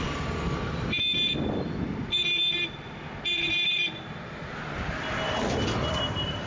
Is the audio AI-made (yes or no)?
no